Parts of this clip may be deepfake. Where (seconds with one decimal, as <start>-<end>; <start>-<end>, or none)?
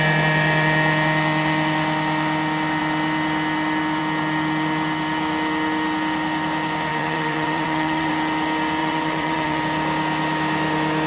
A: 6.9-8.1; 8.8-9.6